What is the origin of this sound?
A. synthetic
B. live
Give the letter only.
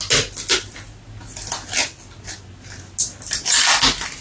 B